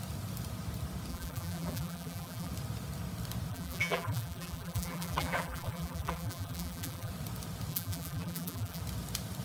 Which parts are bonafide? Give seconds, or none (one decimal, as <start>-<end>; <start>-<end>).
0.0-1.1; 2.5-3.5; 7.1-7.7; 8.8-9.4